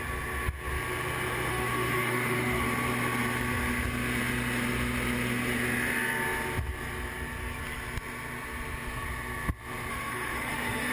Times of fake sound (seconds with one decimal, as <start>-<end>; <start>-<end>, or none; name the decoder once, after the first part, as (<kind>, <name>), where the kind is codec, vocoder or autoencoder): 1.5-2.6 (autoencoder, DAC-VAE); 9.9-10.9